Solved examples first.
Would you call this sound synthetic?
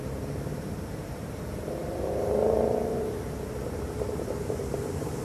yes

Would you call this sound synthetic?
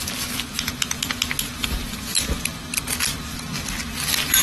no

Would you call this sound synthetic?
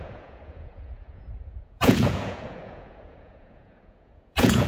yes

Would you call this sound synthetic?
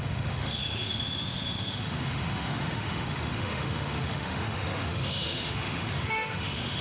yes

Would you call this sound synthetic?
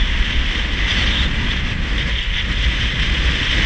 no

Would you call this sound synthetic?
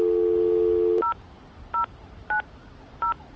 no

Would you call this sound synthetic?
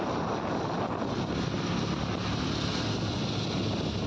no